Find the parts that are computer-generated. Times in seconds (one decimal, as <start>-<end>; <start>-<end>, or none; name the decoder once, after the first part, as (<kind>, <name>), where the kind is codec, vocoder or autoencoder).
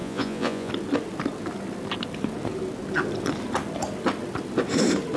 0.0-0.7 (vocoder, Vocos)